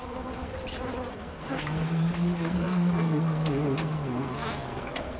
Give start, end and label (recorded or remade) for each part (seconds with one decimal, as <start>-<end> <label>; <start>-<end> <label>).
0.0-0.5 remade; 0.5-1.1 recorded; 1.1-5.2 remade